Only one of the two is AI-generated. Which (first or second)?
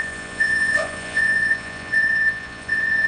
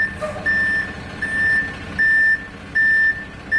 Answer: first